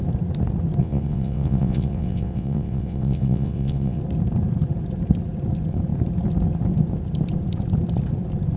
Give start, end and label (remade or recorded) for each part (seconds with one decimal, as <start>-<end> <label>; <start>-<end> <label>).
0.0-0.8 recorded; 0.8-4.0 remade; 4.0-8.6 recorded